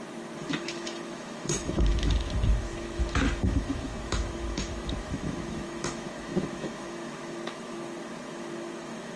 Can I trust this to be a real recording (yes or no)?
no